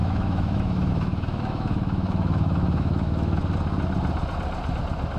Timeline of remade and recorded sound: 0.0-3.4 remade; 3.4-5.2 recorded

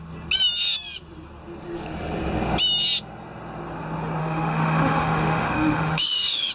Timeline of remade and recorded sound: 0.0-4.2 recorded; 4.2-6.5 remade

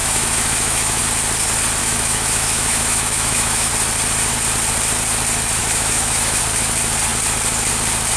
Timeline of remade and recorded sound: 0.0-1.0 remade; 1.0-1.8 recorded; 1.8-3.7 remade; 3.7-5.6 recorded; 5.6-6.4 remade; 6.4-8.2 recorded

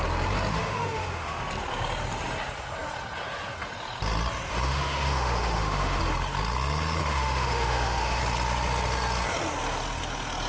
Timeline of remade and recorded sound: 0.0-0.5 recorded; 0.5-1.4 remade; 1.4-4.5 recorded; 4.5-6.0 remade; 6.0-7.0 recorded; 7.0-8.2 remade; 8.2-10.5 recorded

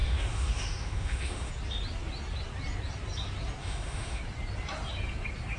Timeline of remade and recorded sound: 0.0-1.5 remade; 1.5-3.6 recorded; 3.6-4.2 remade; 4.2-5.6 recorded

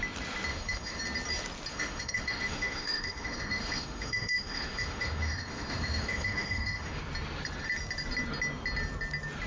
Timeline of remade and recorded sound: 0.0-0.5 recorded; 0.5-1.0 remade; 1.0-1.7 recorded; 1.7-7.0 remade; 7.0-9.5 recorded